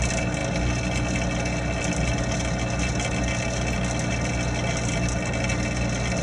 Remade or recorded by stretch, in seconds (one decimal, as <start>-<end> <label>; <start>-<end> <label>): 0.0-6.2 recorded